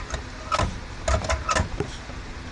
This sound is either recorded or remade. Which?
recorded